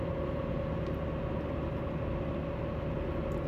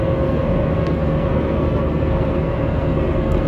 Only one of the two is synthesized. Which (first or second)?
second